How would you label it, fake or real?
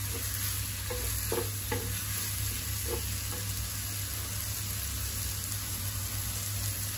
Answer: real